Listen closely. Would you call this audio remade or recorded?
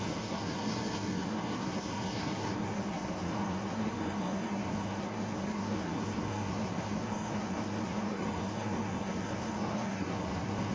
remade